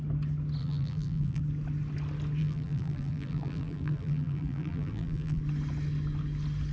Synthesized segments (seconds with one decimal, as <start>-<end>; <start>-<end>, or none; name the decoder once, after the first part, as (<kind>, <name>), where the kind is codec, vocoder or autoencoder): 0.6-1.4 (vocoder, BigVGAN v2); 2.4-5.4